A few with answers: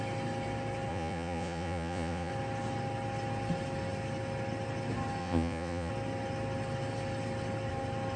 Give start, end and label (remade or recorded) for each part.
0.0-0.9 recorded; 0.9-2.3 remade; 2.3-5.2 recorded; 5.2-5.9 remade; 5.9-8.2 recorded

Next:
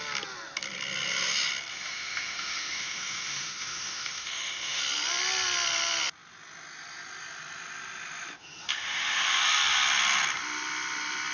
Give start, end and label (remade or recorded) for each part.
0.0-1.7 recorded; 1.7-4.8 remade; 4.8-8.4 recorded; 8.4-9.4 remade; 9.4-11.3 recorded

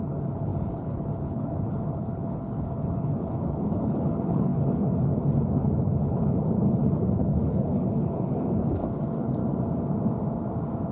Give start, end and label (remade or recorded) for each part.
0.0-9.4 remade; 9.4-10.9 recorded

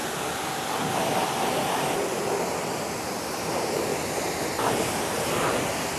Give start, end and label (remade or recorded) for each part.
0.0-3.9 recorded; 3.9-5.4 remade; 5.4-6.0 recorded

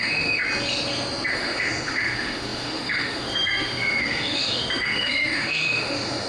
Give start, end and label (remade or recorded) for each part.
0.0-0.4 remade; 0.4-1.3 recorded; 1.3-6.3 remade

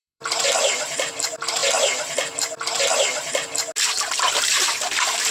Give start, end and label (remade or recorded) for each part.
0.0-1.6 remade; 1.6-4.2 recorded; 4.2-5.3 remade

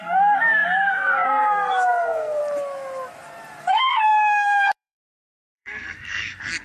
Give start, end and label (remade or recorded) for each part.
0.0-2.4 remade; 2.4-3.6 recorded; 3.6-6.6 remade

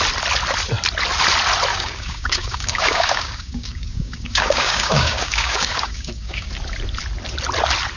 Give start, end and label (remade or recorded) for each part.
0.0-1.7 recorded; 1.7-6.5 remade; 6.5-8.0 recorded